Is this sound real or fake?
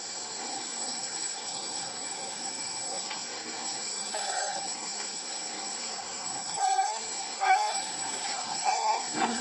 fake